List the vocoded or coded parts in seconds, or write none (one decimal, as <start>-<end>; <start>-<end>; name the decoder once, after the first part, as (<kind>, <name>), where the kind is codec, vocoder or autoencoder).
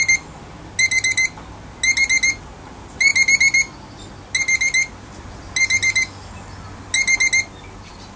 none